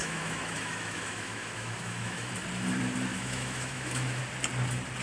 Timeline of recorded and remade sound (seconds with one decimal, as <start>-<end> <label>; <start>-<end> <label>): 0.0-2.3 remade; 2.3-3.1 recorded; 3.1-4.2 remade; 4.2-5.0 recorded